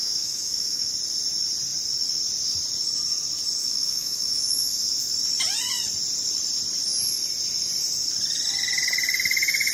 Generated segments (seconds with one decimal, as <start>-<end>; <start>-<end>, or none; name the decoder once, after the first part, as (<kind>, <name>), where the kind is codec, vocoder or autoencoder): 0.0-0.9 (autoencoder, DAC-VAE); 3.6-5.1